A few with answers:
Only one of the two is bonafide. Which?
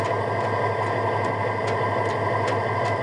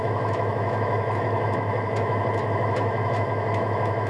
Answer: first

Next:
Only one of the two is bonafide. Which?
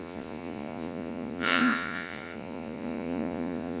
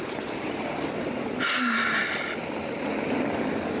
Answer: second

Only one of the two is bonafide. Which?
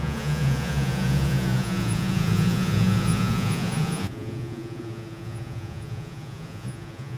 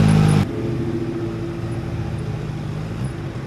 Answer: second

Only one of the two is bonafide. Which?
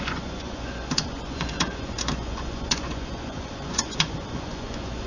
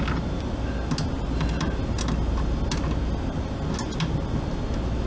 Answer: second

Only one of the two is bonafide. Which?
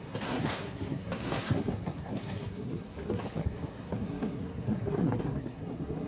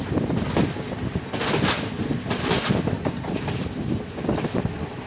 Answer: second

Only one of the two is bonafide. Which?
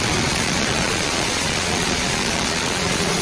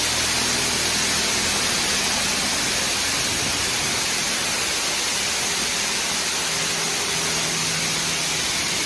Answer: second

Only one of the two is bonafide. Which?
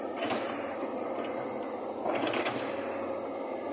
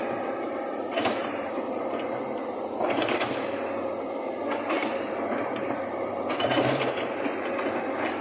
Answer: first